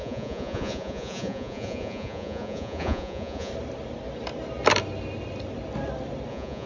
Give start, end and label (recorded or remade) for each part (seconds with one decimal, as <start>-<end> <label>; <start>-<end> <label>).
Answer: 0.0-3.5 remade; 3.5-6.3 recorded; 6.3-6.7 remade